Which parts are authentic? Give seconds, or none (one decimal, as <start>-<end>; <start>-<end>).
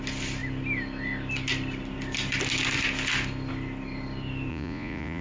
0.0-4.5